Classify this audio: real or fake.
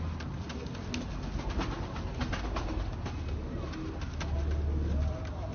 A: real